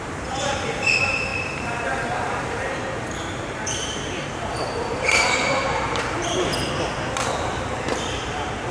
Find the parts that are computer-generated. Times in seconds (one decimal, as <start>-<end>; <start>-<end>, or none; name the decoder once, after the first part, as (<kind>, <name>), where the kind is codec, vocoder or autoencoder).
0.0-6.5 (vocoder, BigVGAN v2); 7.4-8.7